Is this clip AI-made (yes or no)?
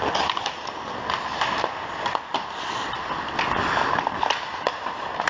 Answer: no